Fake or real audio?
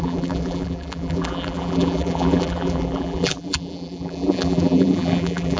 fake